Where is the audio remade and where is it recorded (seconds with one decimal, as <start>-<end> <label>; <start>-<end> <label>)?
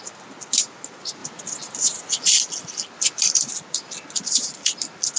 0.0-5.2 recorded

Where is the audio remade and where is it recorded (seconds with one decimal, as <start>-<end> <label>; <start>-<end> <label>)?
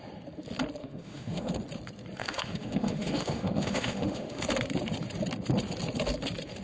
0.0-0.8 recorded; 0.8-1.5 remade; 1.5-2.2 recorded; 2.2-4.4 remade; 4.4-6.6 recorded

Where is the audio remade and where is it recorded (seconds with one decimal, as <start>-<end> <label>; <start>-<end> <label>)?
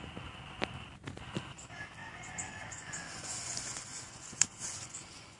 0.0-2.0 recorded; 2.0-5.4 remade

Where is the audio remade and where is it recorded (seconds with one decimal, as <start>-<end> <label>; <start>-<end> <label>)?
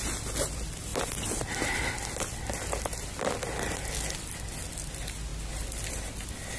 0.0-6.6 recorded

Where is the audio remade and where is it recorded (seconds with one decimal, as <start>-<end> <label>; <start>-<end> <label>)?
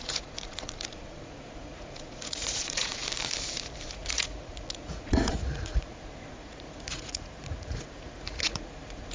0.0-3.0 remade; 3.0-3.9 recorded; 3.9-9.1 remade